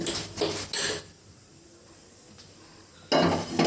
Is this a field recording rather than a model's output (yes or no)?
yes